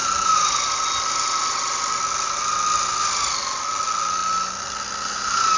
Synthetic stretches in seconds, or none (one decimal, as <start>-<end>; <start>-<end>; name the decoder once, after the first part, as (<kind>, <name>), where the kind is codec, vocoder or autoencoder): none